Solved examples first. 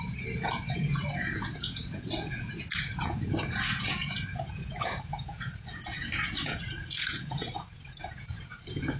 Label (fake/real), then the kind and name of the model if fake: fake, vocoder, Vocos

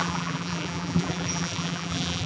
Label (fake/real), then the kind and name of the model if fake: fake, vocoder, BigVGAN v2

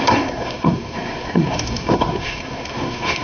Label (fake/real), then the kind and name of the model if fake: fake, codec, SNAC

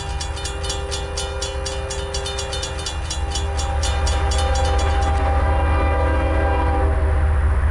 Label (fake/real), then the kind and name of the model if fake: real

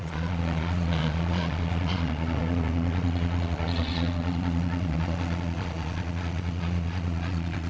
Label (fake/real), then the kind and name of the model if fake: fake, vocoder, Vocos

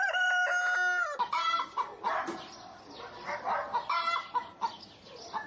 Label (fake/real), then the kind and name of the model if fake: real